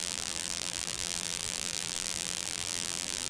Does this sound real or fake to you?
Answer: fake